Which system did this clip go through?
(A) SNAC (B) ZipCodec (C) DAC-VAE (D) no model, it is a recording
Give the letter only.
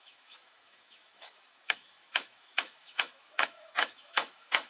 C